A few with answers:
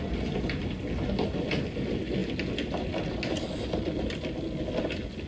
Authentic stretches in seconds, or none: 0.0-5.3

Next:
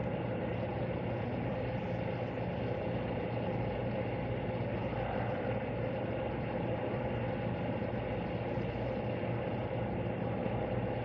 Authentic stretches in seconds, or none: 1.2-4.8; 7.0-11.0

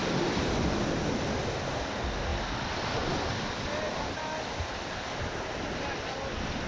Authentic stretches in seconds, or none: 0.0-6.7

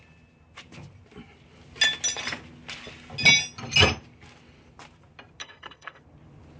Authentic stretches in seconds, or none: 0.0-5.4; 6.0-6.6